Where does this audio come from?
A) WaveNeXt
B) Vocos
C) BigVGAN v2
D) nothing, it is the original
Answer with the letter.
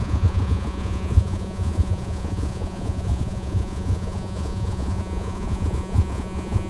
B